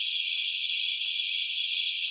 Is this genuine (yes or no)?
no